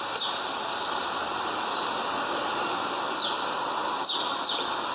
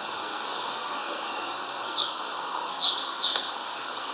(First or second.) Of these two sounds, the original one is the first